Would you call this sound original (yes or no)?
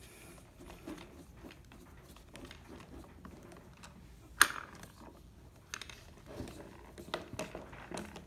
yes